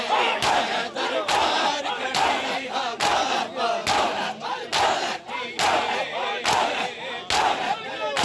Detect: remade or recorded recorded